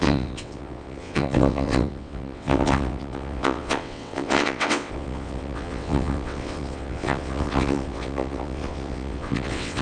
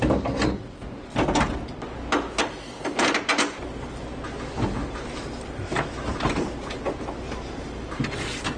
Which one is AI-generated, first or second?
first